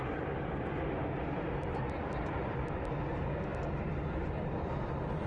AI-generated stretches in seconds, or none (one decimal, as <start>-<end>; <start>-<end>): none